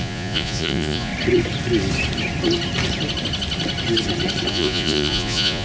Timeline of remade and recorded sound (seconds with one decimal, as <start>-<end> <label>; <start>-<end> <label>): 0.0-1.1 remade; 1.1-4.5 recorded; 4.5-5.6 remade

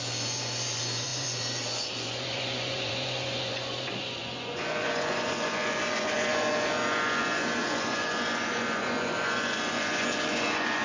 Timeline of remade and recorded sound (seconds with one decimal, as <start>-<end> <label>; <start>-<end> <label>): 0.0-10.8 remade

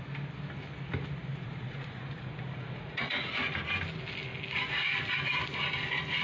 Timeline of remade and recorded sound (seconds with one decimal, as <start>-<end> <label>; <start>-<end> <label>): 0.0-1.3 recorded; 1.3-3.3 remade; 3.3-6.2 recorded